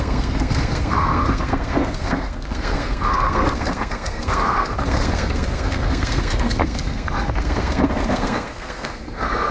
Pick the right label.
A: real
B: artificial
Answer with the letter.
B